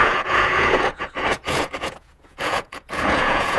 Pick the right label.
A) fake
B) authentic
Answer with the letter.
A